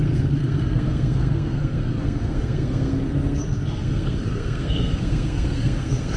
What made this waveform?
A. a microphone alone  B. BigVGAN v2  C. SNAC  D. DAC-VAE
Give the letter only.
C